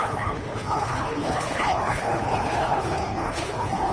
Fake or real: fake